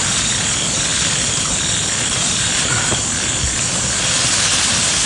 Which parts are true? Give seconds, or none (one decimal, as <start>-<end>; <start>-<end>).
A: 0.0-5.1